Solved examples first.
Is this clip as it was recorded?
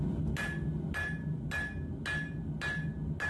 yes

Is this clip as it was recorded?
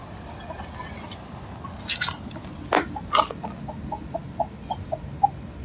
yes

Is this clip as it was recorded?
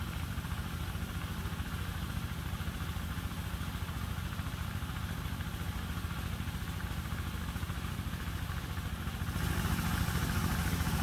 yes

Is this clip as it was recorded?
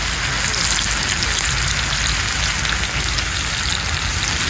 yes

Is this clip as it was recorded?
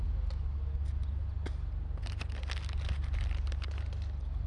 yes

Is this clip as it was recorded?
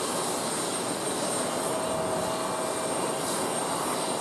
yes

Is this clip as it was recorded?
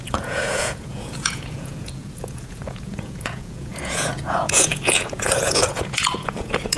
no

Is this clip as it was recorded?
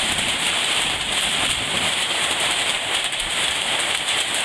no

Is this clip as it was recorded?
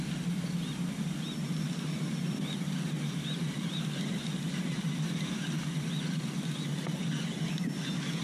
yes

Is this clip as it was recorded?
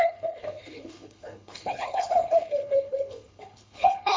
no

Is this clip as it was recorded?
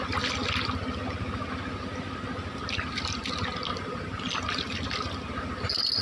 yes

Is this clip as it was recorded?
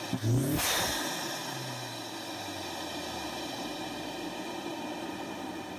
yes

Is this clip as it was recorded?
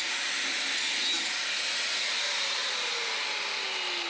yes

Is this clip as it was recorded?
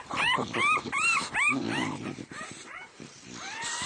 no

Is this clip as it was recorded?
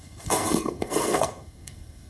no